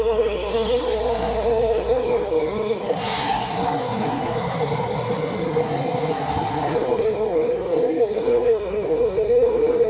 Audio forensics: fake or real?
fake